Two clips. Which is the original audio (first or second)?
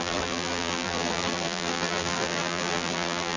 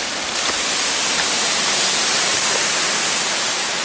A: second